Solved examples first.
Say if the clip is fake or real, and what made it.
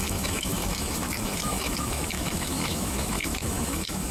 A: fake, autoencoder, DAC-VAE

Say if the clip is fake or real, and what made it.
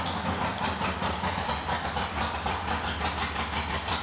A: real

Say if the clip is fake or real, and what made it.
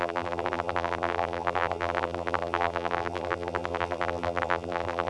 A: fake, vocoder, BigVGAN v2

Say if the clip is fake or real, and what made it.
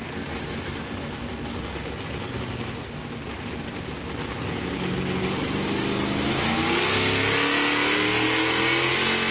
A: real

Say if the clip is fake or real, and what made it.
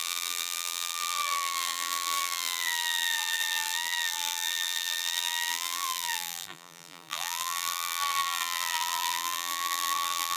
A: fake, vocoder, BigVGAN v2